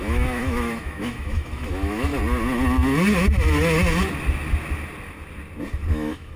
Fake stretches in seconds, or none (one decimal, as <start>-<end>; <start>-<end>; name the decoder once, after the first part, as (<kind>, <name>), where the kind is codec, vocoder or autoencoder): 0.0-2.1 (autoencoder, DAC-VAE); 5.9-6.4